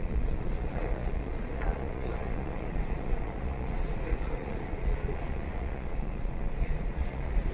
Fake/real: fake